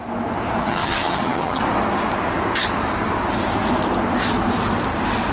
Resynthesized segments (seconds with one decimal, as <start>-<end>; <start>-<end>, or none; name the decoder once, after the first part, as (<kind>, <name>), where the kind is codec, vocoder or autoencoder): 0.6-1.6 (vocoder, HiFi-GAN)